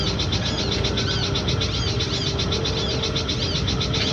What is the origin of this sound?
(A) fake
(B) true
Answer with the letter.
B